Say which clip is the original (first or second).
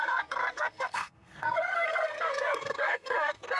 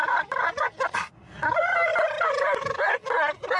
second